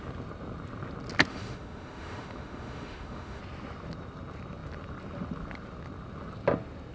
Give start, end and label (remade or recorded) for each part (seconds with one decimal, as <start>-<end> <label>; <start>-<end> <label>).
0.0-1.3 recorded; 1.3-3.4 remade; 3.4-6.9 recorded